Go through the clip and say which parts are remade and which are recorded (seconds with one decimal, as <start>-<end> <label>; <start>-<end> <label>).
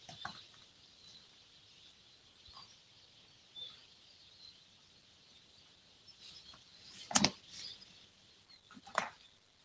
0.0-9.6 recorded